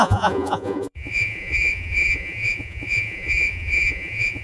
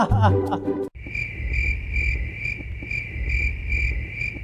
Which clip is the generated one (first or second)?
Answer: first